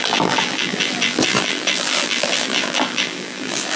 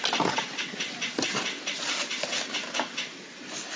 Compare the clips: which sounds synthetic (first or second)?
first